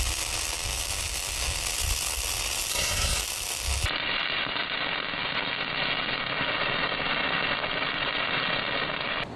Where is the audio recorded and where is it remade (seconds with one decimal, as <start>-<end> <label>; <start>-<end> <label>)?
0.0-2.7 recorded; 2.7-3.2 remade; 3.2-9.4 recorded